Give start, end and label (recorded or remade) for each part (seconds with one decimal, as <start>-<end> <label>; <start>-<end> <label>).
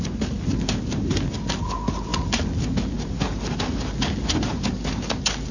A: 0.0-5.5 recorded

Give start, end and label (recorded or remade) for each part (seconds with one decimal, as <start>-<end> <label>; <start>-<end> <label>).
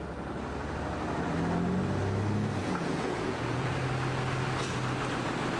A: 0.0-2.6 recorded; 2.6-3.7 remade; 3.7-5.6 recorded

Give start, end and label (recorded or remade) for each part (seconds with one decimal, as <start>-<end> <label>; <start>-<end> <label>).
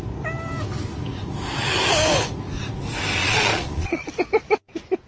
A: 0.0-3.2 recorded; 3.2-4.1 remade; 4.1-5.1 recorded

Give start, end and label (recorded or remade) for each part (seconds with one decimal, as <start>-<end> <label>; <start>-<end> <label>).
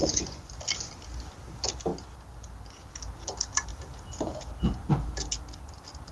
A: 0.0-0.5 remade; 0.5-6.1 recorded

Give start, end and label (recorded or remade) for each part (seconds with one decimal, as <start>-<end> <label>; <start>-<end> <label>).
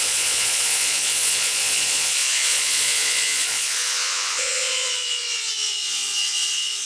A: 0.0-6.9 remade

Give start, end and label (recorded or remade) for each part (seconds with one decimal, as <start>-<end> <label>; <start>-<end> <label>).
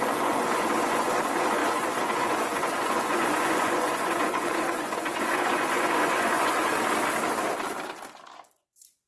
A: 0.0-6.7 remade; 6.7-8.6 recorded; 8.6-9.1 remade